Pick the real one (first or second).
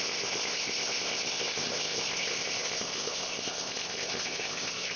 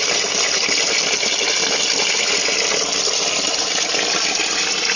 second